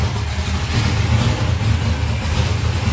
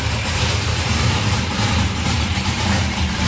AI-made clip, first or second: second